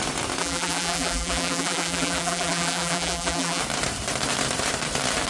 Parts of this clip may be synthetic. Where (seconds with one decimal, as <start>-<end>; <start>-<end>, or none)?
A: 0.4-3.6